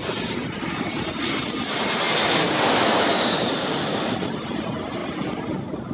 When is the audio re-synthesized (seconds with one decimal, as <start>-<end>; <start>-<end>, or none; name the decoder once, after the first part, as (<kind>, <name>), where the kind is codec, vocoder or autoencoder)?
none